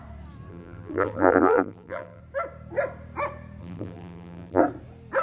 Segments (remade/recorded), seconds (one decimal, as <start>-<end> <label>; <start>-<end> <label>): 0.0-0.5 recorded; 0.5-2.2 remade; 2.2-3.6 recorded; 3.6-4.6 remade; 4.6-5.2 recorded